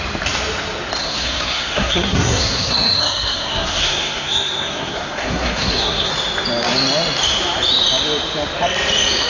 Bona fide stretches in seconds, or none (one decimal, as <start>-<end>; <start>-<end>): 0.0-1.0; 6.1-9.3